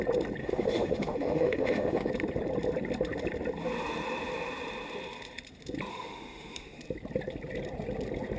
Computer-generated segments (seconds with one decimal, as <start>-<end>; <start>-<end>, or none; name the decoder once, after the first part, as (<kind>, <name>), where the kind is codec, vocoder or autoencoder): 0.4-2.1 (autoencoder, DAC-VAE); 5.9-6.8